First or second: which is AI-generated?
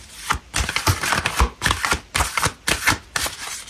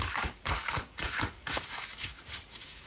second